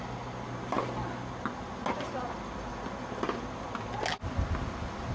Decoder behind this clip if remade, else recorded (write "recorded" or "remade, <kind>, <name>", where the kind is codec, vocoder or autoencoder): recorded